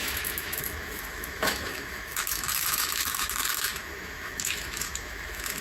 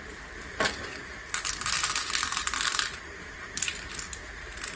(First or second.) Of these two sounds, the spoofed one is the first